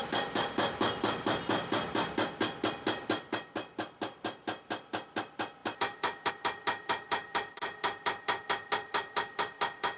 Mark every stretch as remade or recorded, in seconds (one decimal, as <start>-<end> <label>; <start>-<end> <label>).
0.0-10.0 recorded